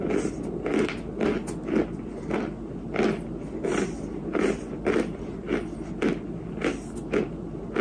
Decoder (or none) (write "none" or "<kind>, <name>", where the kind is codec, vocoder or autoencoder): none